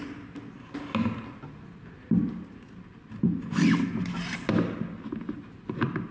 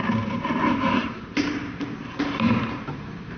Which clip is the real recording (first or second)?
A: first